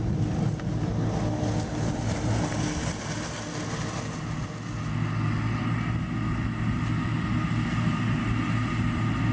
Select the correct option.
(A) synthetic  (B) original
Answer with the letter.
B